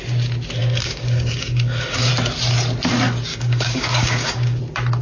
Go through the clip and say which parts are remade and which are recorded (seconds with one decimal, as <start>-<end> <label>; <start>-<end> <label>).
0.0-0.6 recorded; 0.6-2.1 remade; 2.1-3.3 recorded; 3.3-4.6 remade; 4.6-5.0 recorded